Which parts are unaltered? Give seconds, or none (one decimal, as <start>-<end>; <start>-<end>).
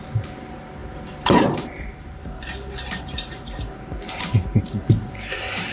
none